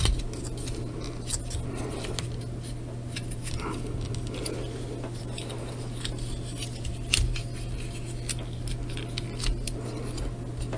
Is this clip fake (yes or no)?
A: no